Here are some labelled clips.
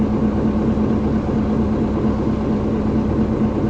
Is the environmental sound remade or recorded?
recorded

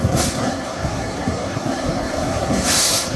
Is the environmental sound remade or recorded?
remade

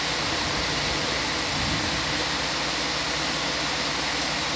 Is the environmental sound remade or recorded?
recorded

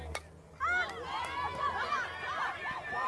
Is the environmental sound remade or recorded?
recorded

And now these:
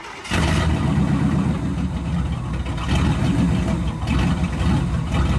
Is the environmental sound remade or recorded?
recorded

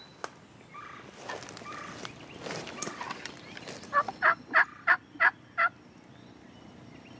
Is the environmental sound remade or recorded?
recorded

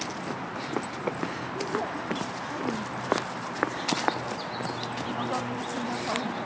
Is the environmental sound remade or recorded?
recorded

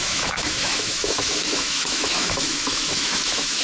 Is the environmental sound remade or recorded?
remade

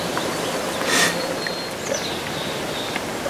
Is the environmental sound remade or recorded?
recorded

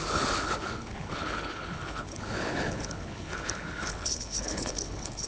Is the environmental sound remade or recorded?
remade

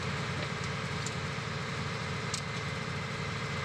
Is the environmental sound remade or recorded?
recorded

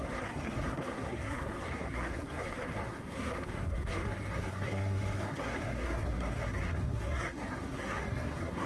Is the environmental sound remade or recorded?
remade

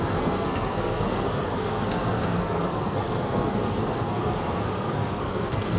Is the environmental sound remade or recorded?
remade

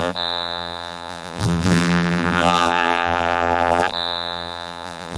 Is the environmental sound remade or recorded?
remade